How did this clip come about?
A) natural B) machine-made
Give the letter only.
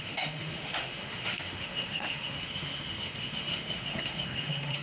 B